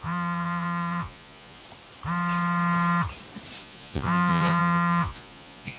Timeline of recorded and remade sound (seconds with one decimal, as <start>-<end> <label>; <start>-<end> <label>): 0.0-1.6 remade; 1.6-3.6 recorded; 3.6-5.8 remade